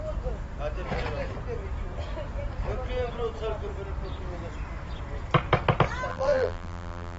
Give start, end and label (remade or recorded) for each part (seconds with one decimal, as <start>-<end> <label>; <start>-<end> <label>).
0.0-6.1 recorded; 6.1-7.2 remade